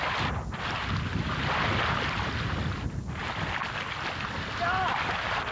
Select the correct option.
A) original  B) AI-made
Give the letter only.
A